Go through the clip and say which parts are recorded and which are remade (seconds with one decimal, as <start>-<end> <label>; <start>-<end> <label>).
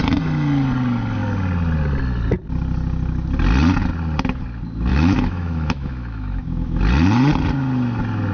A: 0.0-4.9 recorded; 4.9-6.8 remade; 6.8-8.3 recorded